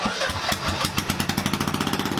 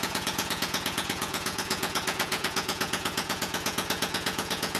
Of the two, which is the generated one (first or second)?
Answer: second